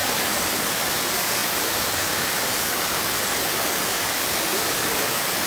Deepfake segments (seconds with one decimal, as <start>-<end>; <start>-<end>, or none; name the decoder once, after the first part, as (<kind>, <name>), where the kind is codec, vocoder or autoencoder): 0.0-5.5 (codec, DAC)